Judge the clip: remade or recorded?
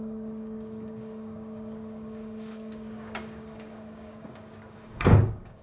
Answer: remade